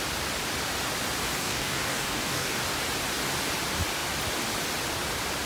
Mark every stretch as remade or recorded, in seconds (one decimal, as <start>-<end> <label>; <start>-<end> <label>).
0.0-1.4 recorded; 1.4-2.6 remade; 2.6-5.5 recorded